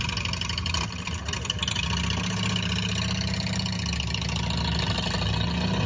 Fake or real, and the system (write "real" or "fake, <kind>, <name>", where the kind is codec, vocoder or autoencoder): real